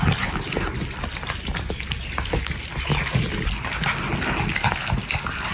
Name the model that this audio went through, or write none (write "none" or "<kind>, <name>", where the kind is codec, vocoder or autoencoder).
none